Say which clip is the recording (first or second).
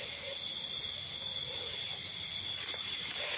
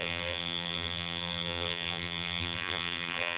first